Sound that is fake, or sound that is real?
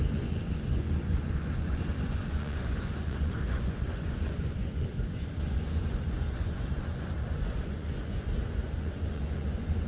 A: fake